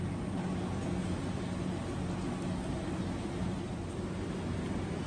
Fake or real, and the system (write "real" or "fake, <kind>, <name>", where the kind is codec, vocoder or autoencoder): real